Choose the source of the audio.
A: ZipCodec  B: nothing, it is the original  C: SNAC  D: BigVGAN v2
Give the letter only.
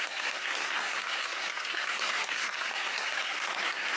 C